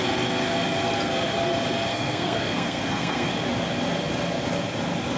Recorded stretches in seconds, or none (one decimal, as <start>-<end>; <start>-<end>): 0.0-1.9; 3.3-5.2